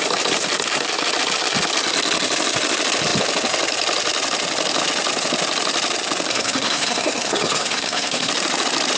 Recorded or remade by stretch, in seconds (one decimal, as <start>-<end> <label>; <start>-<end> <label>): 0.0-6.3 recorded; 6.3-8.3 remade; 8.3-9.0 recorded

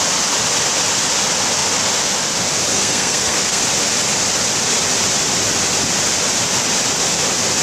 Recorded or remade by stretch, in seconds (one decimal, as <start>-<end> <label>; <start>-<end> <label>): 0.0-2.7 recorded; 2.7-3.6 remade; 3.6-7.6 recorded

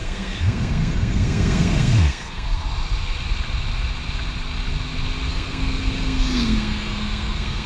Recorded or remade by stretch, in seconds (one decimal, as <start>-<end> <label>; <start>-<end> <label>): 0.0-2.6 remade; 2.6-5.3 recorded; 5.3-7.7 remade

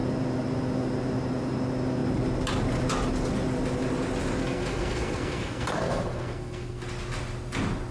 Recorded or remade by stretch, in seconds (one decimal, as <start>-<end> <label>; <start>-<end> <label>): 0.0-4.4 recorded; 4.4-6.8 remade; 6.8-7.9 recorded